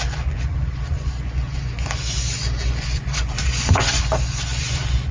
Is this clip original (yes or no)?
no